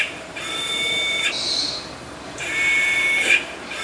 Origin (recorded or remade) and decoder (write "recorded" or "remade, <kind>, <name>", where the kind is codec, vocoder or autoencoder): remade, vocoder, BigVGAN v2